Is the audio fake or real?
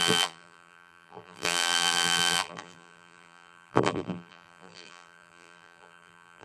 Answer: fake